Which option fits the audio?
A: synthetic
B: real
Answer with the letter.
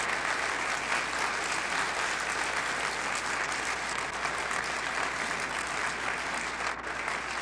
B